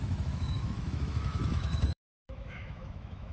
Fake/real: fake